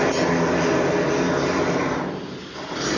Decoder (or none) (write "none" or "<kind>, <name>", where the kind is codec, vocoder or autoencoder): none